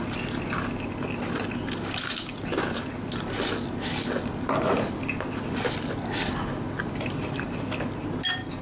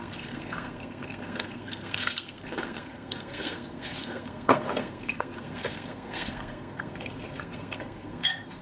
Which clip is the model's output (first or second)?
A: second